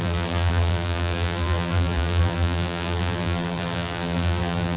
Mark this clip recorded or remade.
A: remade